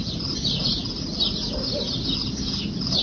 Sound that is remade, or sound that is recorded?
recorded